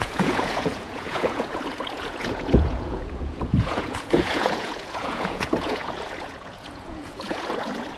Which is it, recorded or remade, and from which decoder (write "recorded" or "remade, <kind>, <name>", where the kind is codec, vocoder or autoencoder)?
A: remade, vocoder, Vocos